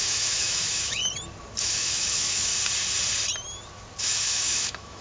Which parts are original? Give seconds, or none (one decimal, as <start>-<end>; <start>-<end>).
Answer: 1.0-1.6; 2.5-4.0